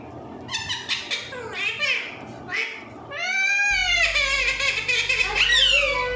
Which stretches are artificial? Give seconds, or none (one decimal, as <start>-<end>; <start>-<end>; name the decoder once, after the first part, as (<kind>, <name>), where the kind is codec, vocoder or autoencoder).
none